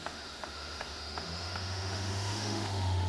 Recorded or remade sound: remade